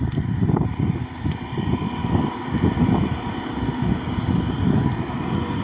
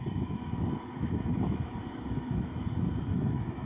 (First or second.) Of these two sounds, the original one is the first